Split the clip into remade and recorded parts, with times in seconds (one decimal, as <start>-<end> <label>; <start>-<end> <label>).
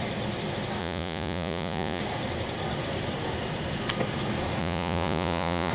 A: 0.0-0.8 recorded; 0.8-2.0 remade; 2.0-4.6 recorded; 4.6-5.7 remade